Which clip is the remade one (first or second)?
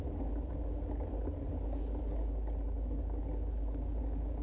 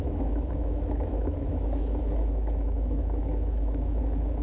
second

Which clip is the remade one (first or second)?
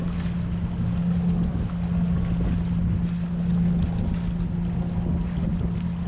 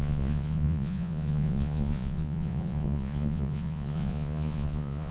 second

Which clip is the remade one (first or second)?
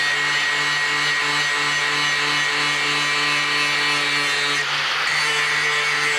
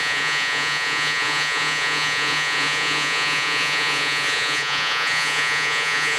second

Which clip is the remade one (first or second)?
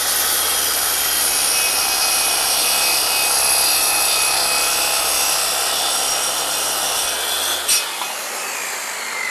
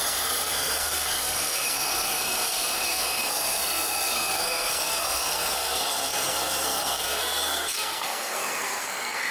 second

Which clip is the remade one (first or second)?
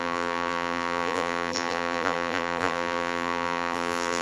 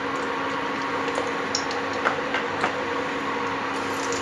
first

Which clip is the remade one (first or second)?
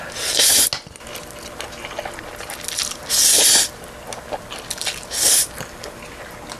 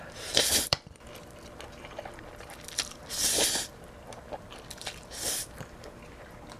second